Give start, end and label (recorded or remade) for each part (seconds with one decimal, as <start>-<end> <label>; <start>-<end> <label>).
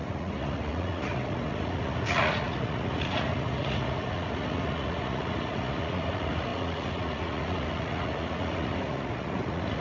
0.0-9.8 remade